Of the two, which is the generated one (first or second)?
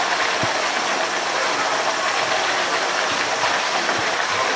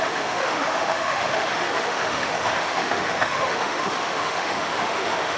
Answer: second